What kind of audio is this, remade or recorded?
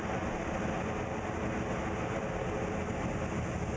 recorded